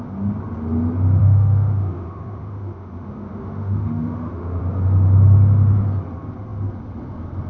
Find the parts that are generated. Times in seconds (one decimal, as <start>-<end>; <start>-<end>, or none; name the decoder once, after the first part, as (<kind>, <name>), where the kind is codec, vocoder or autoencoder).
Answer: 1.2-4.6 (autoencoder, DAC-VAE)